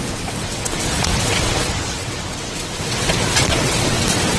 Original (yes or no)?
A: no